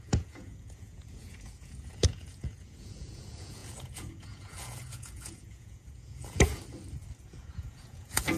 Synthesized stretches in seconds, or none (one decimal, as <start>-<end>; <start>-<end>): 0.0-6.5; 7.2-8.4